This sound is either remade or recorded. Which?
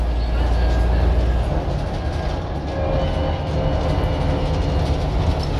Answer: recorded